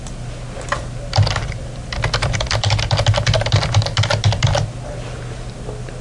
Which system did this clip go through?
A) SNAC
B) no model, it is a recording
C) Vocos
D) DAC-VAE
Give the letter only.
B